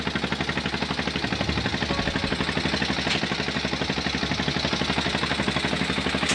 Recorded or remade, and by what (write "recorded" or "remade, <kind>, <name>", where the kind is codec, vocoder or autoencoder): recorded